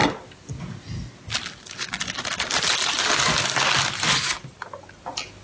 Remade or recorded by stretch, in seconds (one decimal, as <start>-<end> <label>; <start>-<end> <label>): 0.0-5.4 recorded